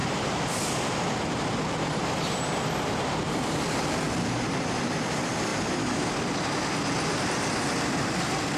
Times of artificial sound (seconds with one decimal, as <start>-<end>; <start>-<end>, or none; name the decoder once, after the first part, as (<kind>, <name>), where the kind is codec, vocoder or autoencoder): none